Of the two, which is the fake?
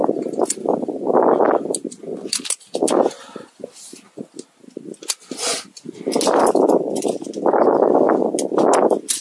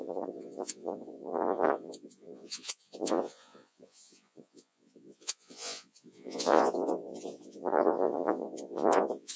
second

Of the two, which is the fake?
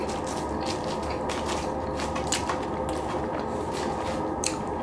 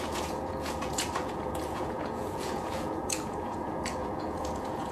second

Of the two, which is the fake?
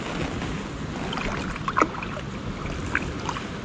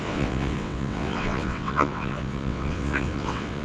second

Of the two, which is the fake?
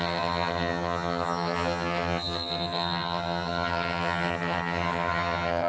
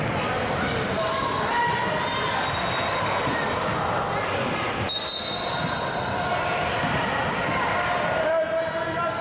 first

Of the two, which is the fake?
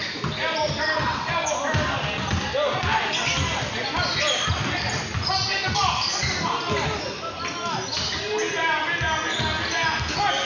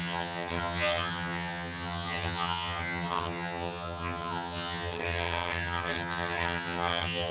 second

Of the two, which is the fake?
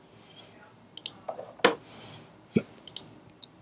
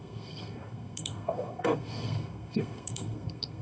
second